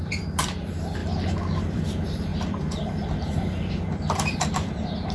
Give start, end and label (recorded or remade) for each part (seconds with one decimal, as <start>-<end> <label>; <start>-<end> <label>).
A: 0.0-1.0 remade; 1.0-1.7 recorded; 1.7-5.1 remade

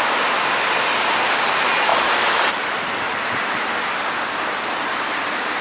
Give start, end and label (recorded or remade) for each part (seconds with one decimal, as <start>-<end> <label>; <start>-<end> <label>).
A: 0.0-5.6 recorded

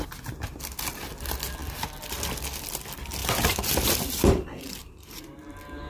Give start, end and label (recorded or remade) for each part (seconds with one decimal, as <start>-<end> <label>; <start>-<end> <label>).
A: 0.0-1.6 recorded; 1.6-2.8 remade; 2.8-3.2 recorded; 3.2-5.2 remade; 5.2-5.9 recorded

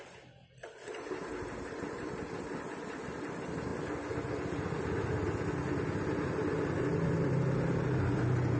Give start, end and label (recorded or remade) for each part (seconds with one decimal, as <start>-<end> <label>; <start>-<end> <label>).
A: 0.0-1.3 recorded; 1.3-2.2 remade; 2.2-8.6 recorded

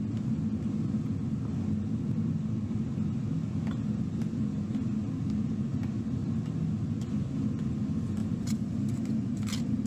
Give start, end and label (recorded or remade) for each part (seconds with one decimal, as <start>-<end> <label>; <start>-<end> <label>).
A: 0.0-6.2 recorded; 6.2-6.8 remade; 6.8-8.2 recorded; 8.2-9.9 remade

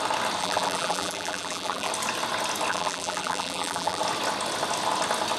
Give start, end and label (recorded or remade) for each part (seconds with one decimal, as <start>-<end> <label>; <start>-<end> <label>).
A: 0.0-0.4 recorded; 0.4-1.9 remade; 1.9-2.7 recorded; 2.7-4.0 remade; 4.0-5.4 recorded

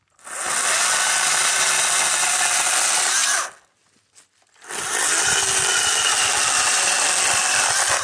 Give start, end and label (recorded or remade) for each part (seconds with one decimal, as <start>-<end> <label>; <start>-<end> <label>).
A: 0.0-8.0 recorded

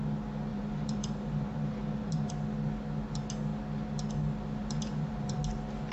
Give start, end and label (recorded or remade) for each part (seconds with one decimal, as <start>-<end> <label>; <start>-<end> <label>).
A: 0.0-0.5 recorded; 0.5-2.3 remade; 2.3-4.6 recorded; 4.6-5.4 remade; 5.4-5.9 recorded